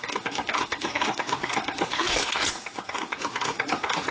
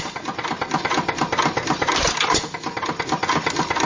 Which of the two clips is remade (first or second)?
first